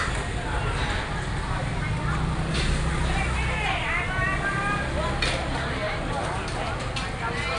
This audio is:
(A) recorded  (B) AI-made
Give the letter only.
A